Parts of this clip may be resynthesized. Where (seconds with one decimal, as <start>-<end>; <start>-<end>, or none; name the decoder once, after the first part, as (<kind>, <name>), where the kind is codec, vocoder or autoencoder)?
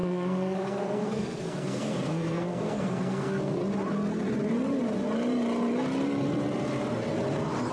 0.0-3.6 (codec, SNAC)